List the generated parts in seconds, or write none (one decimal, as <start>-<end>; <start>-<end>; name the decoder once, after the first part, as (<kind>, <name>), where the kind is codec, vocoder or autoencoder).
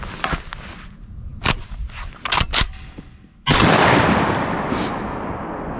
none